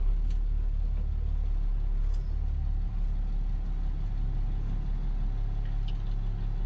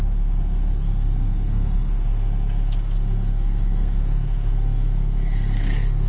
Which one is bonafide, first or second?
first